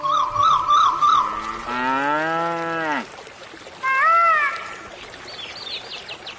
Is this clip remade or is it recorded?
recorded